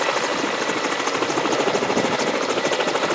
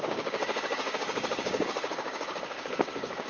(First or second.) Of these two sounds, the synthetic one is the second